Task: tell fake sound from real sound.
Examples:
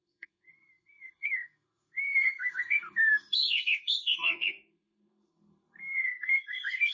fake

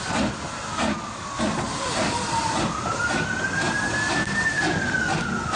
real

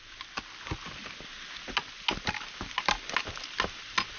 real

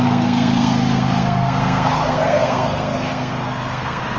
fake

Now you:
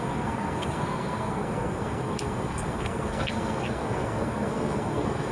fake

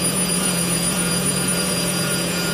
fake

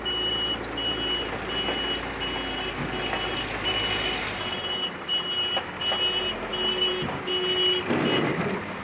real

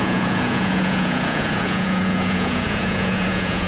fake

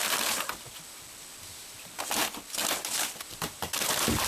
real